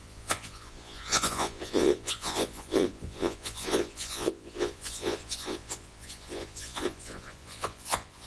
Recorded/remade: remade